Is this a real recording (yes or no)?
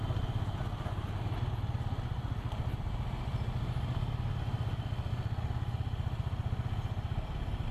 yes